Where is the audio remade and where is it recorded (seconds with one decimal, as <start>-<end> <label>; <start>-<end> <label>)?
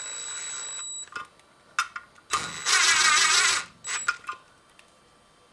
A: 0.0-5.5 recorded